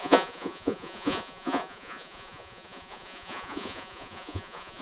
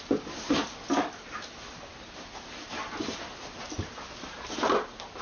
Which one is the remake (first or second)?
first